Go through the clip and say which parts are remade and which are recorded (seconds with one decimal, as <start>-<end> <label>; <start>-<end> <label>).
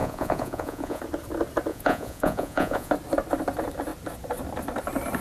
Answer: 0.0-1.0 remade; 1.0-1.7 recorded; 1.7-2.9 remade; 2.9-5.2 recorded